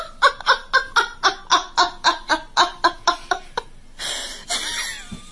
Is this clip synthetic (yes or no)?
no